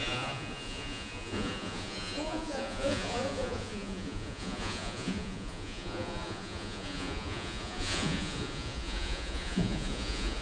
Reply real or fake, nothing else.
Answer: fake